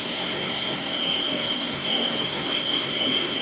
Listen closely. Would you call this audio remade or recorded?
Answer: remade